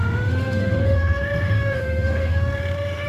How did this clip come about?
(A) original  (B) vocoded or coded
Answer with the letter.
B